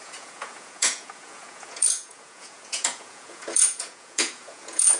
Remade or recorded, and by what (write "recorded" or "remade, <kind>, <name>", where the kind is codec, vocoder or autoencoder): remade, vocoder, Vocos